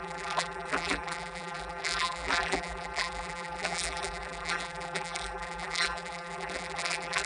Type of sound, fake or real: fake